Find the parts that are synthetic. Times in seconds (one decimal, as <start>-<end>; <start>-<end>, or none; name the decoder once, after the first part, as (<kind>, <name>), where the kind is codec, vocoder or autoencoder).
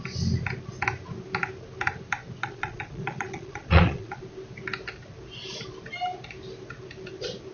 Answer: 2.4-4.2 (vocoder, Vocos)